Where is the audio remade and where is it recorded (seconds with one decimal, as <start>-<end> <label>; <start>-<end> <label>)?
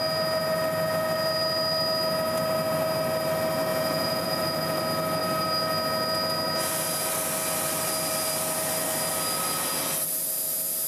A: 0.0-3.7 recorded; 3.7-4.8 remade; 4.8-10.9 recorded